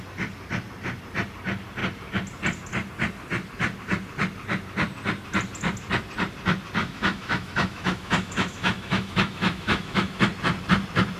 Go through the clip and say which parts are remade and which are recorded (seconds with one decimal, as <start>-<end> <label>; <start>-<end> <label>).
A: 0.0-6.8 recorded; 6.8-10.3 remade; 10.3-11.2 recorded